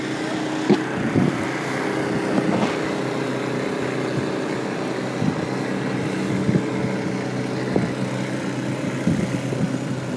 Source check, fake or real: real